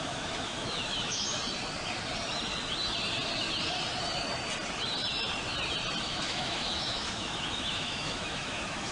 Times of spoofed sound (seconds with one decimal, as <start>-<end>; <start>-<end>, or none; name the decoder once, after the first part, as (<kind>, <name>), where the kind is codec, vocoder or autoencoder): 0.0-1.4 (autoencoder, DAC-VAE); 6.0-8.9